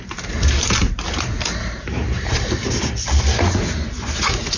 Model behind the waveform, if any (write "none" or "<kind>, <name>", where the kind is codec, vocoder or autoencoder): vocoder, BigVGAN v2